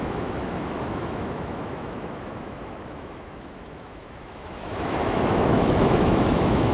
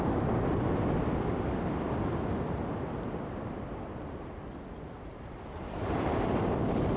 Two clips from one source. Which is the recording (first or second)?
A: second